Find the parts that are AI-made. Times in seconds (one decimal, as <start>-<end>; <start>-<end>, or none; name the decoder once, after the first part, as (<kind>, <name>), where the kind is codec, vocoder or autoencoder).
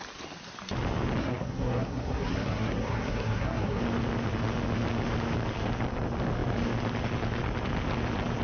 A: 1.2-3.8 (codec, SNAC)